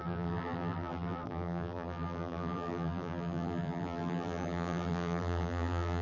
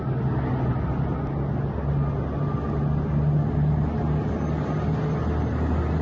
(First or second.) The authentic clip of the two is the second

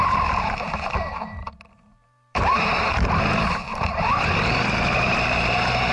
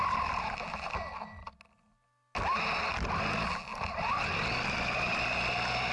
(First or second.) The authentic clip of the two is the second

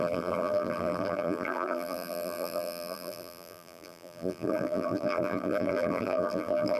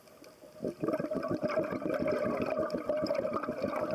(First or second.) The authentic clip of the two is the second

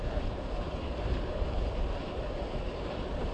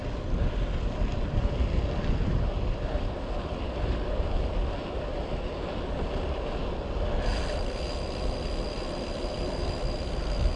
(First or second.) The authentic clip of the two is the second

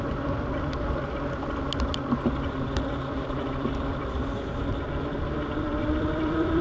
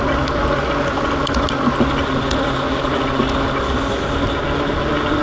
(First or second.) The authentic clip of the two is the second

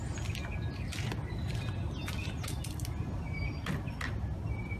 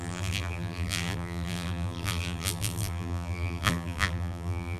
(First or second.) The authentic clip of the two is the first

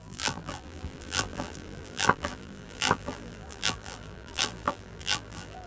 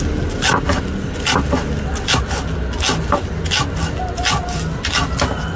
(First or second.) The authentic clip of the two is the second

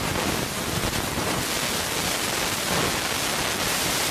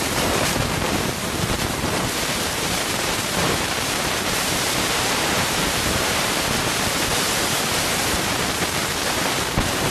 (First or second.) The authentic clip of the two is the first